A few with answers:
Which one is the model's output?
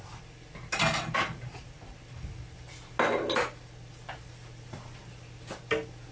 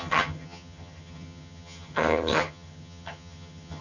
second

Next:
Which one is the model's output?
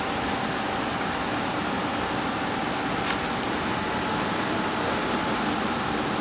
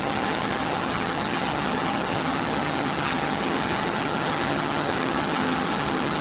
second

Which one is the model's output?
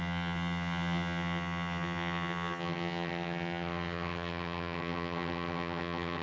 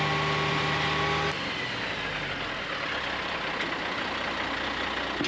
first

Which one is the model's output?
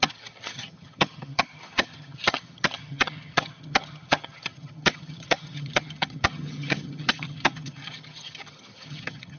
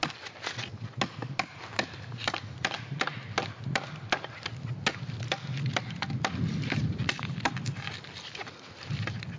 first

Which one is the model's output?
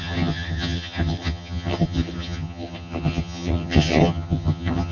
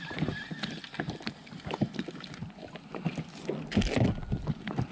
first